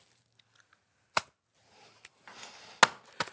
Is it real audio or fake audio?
real